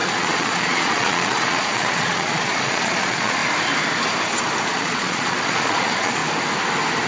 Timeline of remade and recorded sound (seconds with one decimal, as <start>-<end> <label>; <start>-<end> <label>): 0.0-3.4 remade; 3.4-4.7 recorded; 4.7-6.2 remade; 6.2-7.1 recorded